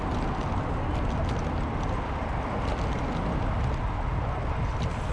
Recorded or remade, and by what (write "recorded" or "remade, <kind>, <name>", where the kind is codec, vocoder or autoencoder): recorded